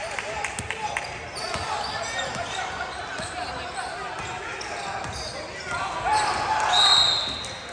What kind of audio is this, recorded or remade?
recorded